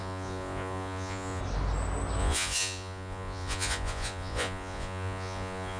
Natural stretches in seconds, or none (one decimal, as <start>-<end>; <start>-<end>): 1.4-2.2